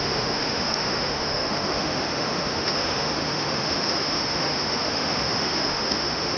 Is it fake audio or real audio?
fake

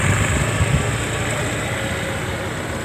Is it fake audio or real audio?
real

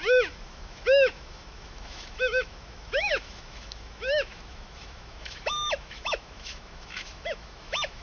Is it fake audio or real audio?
fake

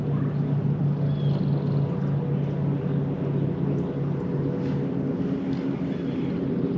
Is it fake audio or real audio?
real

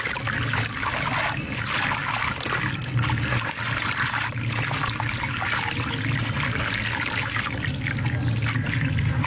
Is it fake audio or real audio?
real